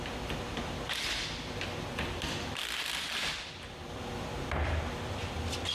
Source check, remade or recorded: remade